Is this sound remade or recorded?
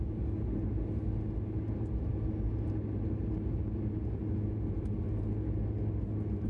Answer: recorded